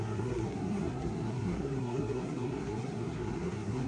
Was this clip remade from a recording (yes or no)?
yes